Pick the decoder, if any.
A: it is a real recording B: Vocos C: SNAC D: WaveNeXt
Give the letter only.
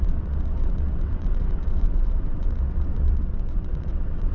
D